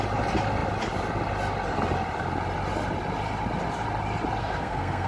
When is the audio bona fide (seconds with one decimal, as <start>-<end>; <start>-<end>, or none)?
0.0-4.4